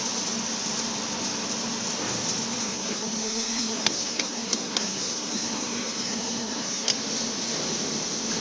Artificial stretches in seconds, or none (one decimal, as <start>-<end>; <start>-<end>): 2.6-6.9